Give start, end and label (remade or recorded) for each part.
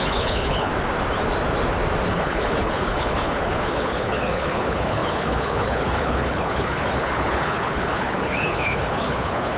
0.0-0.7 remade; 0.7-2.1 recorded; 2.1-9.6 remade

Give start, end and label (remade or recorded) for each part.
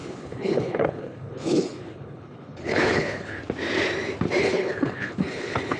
0.0-3.4 remade; 3.4-4.4 recorded; 4.4-5.8 remade